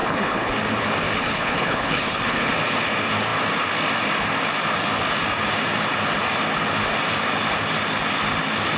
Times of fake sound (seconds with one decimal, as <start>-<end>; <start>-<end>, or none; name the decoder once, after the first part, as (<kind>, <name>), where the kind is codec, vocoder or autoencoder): 0.0-0.5 (codec, HILCodec); 1.2-2.5